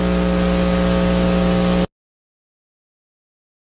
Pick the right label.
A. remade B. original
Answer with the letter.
B